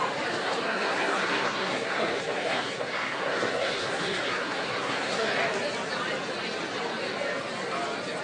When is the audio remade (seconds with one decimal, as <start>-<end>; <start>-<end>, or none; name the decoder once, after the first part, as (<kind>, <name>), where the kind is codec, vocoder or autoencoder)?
0.4-5.3 (codec, SNAC)